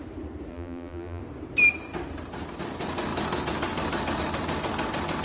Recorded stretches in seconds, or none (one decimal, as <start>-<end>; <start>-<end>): 0.0-0.5; 1.2-5.2